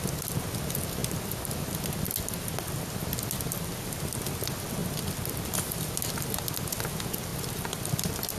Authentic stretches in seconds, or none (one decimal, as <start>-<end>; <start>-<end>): 0.0-8.4